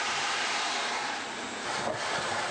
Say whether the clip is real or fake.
fake